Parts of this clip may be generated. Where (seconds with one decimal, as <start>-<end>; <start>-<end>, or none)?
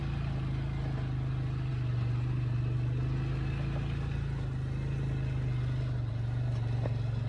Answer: none